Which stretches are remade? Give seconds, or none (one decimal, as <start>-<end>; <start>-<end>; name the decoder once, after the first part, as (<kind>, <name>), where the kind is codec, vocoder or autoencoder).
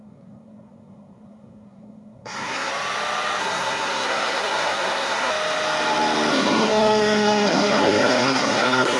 0.0-2.7 (codec, SNAC); 3.4-5.3; 6.3-9.0